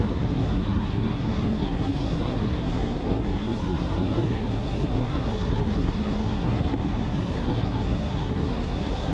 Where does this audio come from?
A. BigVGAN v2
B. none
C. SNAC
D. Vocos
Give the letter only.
C